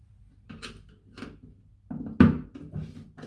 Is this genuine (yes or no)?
yes